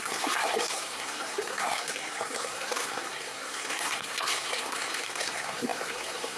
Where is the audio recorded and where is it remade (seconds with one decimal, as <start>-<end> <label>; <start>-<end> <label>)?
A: 0.0-6.4 remade